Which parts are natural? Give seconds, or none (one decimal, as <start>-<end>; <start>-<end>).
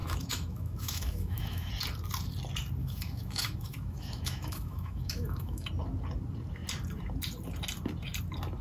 1.7-2.8; 5.7-8.6